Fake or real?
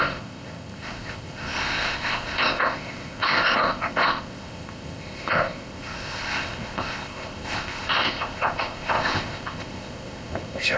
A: fake